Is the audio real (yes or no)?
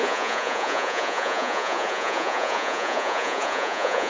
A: no